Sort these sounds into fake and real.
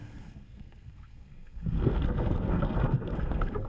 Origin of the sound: fake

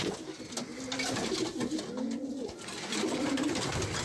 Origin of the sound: real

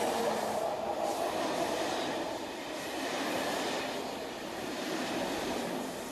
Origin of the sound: real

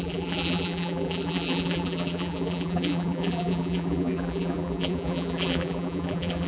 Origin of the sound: fake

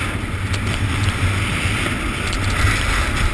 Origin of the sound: real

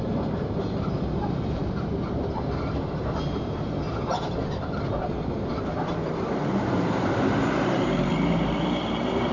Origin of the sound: fake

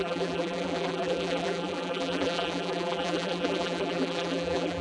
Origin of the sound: fake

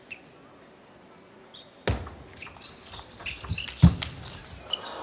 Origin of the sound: real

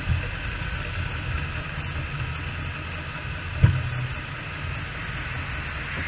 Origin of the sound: real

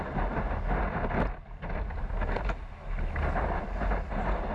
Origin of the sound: real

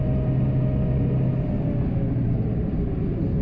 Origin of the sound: real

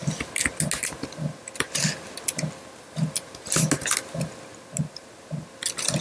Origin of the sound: real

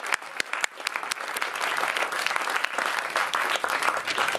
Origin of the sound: real